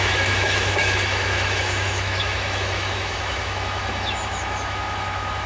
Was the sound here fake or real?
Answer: fake